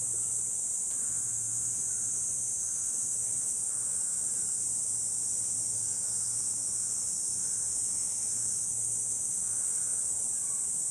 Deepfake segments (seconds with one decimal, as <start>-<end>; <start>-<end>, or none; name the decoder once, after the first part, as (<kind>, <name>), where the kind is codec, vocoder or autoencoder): 1.0-1.9 (autoencoder, DAC-VAE); 2.5-4.3; 5.6-10.2